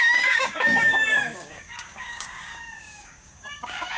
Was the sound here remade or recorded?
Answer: remade